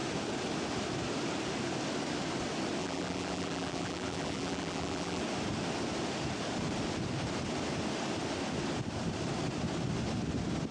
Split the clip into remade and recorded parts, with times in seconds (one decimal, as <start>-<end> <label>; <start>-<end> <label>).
0.0-2.8 recorded; 2.8-5.2 remade; 5.2-10.7 recorded